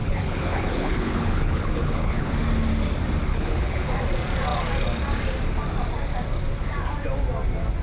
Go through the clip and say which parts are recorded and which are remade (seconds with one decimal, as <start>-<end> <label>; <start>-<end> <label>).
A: 0.0-2.3 remade; 2.3-3.3 recorded; 3.3-3.9 remade; 3.9-7.8 recorded